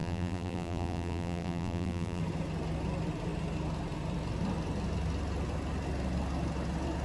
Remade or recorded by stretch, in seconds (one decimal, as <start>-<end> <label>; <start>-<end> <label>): 0.0-2.2 remade; 2.2-7.0 recorded

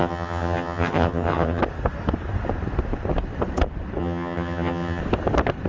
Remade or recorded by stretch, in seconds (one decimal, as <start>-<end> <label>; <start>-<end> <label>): 0.0-1.6 remade; 1.6-4.0 recorded; 4.0-5.0 remade; 5.0-5.7 recorded

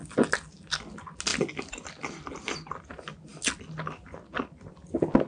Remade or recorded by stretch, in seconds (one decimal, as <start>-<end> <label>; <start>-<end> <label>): 0.0-5.3 recorded

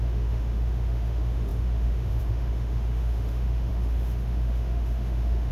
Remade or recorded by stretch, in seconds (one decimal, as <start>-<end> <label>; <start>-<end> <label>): 0.0-5.5 remade

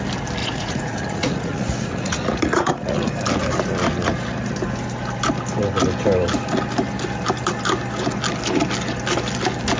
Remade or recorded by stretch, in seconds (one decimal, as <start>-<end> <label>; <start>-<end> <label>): 0.0-0.4 recorded; 0.4-3.1 remade; 3.1-9.8 recorded